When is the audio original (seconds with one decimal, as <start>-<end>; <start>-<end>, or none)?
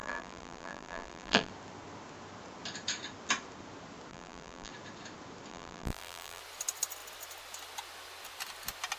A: 1.5-4.1; 4.7-5.5; 6.4-9.0